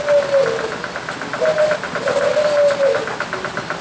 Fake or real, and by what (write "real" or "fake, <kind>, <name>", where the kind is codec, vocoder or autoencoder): real